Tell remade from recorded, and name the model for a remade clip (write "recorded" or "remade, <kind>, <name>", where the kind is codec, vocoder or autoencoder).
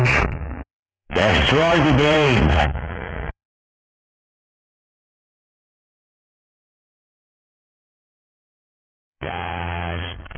remade, vocoder, Vocos